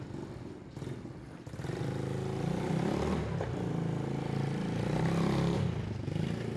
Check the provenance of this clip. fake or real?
real